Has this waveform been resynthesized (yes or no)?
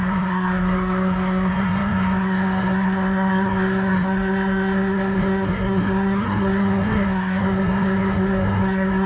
yes